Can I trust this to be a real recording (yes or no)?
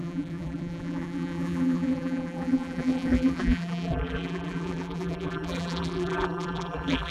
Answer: no